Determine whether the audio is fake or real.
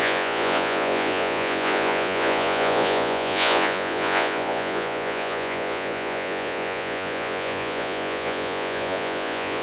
fake